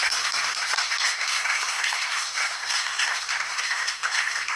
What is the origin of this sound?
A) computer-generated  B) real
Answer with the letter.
A